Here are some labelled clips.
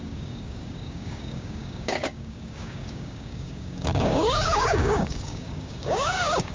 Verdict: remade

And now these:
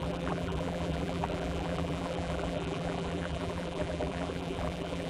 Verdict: remade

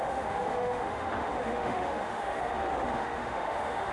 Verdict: remade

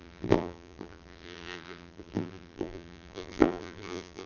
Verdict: remade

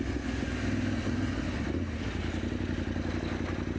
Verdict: recorded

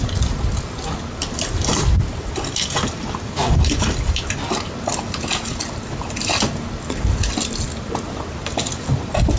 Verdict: recorded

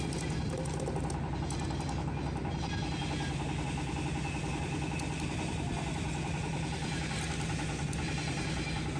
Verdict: recorded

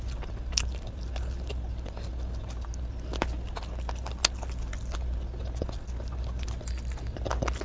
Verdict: recorded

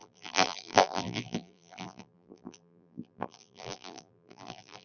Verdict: remade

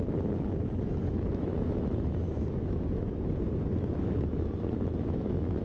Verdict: remade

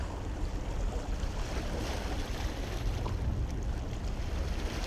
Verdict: recorded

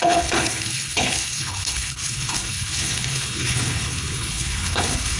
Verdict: remade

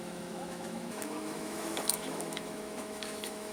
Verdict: remade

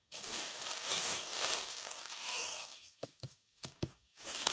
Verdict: remade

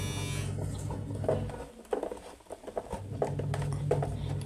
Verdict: recorded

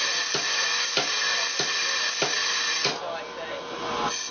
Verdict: recorded